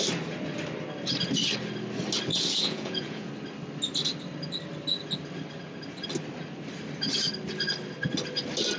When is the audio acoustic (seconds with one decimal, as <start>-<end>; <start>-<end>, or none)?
0.0-2.3; 3.3-8.8